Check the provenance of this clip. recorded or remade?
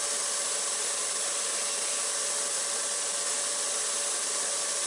recorded